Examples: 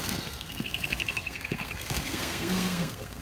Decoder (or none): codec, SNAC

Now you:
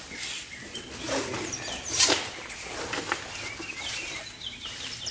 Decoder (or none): none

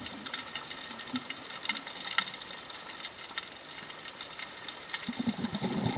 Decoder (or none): none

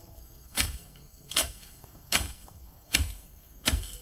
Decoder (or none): codec, SNAC